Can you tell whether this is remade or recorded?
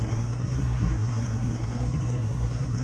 remade